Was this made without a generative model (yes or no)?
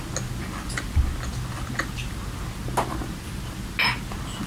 yes